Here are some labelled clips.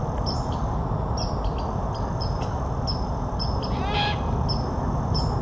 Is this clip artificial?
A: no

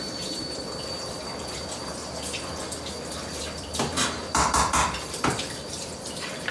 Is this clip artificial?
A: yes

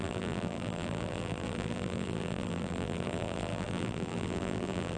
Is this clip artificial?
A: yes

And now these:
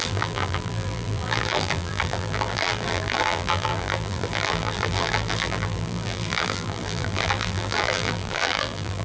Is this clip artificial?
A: yes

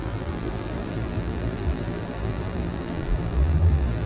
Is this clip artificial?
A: yes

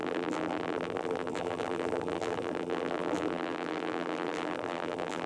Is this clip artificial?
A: yes